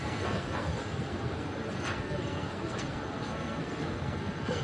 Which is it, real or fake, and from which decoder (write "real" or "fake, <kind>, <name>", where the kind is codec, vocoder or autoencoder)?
fake, codec, SNAC